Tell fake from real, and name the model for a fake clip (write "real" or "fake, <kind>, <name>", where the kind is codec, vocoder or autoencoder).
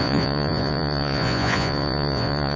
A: fake, vocoder, Vocos